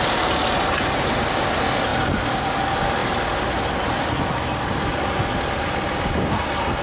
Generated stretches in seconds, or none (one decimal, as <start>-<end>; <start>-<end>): none